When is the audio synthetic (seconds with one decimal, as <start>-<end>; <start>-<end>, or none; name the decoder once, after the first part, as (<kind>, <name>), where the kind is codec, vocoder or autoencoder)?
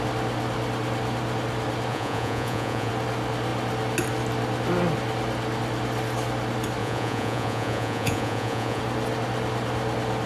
1.9-2.9 (vocoder, Vocos); 6.8-8.8